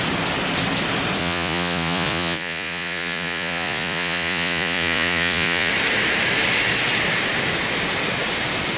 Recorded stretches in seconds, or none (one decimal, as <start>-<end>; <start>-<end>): 0.0-1.2; 5.7-8.8